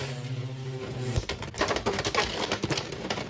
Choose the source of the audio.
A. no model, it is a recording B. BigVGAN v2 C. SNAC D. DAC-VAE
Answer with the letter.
A